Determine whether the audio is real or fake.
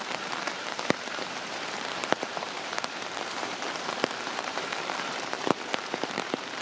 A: fake